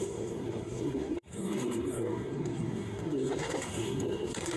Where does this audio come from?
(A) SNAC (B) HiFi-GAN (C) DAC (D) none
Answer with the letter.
A